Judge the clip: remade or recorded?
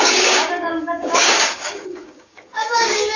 remade